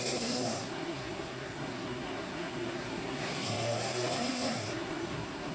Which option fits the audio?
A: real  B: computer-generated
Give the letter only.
B